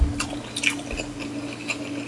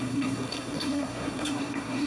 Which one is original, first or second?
first